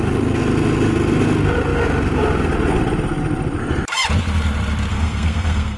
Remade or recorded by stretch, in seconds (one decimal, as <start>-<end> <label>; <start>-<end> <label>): 0.0-4.9 recorded; 4.9-5.8 remade